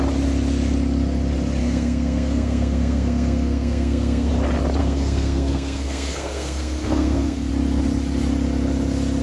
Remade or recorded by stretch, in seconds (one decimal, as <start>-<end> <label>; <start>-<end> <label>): 0.0-1.6 recorded; 1.6-4.3 remade; 4.3-4.8 recorded; 4.8-7.5 remade; 7.5-9.2 recorded